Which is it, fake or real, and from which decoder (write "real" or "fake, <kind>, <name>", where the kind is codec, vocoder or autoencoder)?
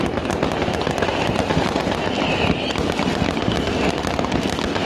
real